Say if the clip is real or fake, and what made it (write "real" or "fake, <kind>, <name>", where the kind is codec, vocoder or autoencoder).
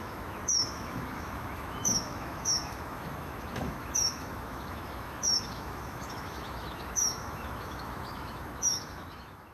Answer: fake, autoencoder, DAC-VAE